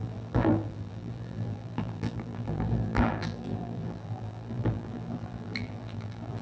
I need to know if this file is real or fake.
fake